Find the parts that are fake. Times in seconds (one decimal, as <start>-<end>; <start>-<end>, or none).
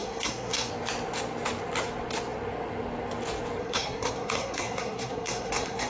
0.0-0.7; 3.6-5.9